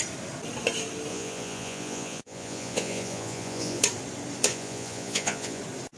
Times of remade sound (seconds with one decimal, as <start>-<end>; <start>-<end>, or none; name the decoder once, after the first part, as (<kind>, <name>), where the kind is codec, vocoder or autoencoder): 1.1-3.8 (vocoder, Vocos); 4.5-5.6